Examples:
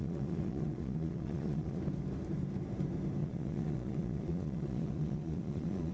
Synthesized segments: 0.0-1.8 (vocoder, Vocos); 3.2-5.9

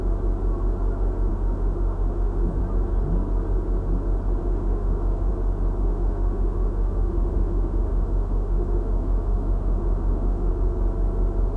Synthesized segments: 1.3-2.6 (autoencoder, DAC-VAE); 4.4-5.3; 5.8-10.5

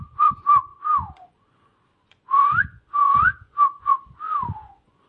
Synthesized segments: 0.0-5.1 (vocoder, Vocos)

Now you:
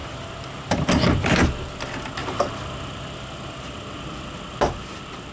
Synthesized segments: 0.0-1.3 (vocoder, BigVGAN v2)

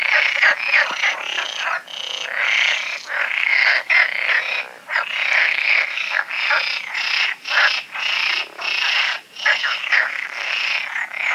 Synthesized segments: 3.2-3.9 (codec, SNAC); 5.4-6.3; 9.6-10.5

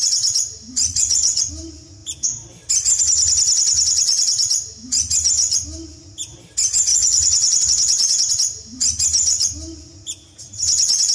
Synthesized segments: 0.9-1.5 (vocoder, Vocos); 6.9-8.3